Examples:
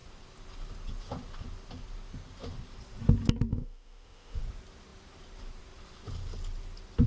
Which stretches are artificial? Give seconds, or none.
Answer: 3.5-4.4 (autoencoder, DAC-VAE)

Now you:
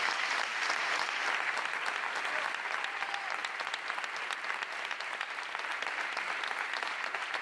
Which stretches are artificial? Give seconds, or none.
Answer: none

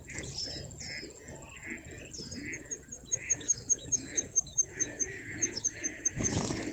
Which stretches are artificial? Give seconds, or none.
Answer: 3.1-6.7 (autoencoder, DAC-VAE)

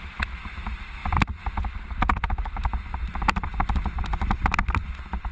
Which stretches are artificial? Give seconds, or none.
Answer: none

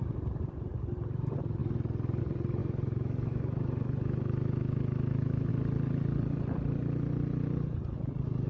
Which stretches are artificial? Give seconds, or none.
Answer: 2.6-5.5 (autoencoder, DAC-VAE)

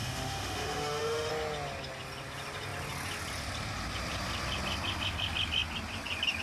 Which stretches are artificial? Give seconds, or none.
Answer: 0.0-1.3 (autoencoder, DAC-VAE)